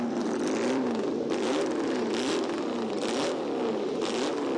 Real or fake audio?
real